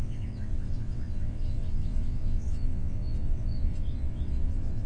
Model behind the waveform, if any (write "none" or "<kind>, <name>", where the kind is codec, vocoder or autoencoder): vocoder, WaveNeXt